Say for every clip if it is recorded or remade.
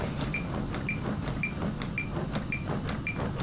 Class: recorded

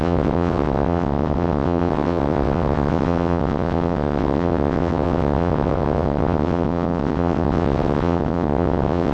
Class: remade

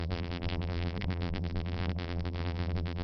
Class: remade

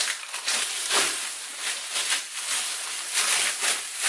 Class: recorded